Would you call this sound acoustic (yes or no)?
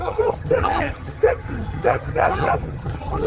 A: no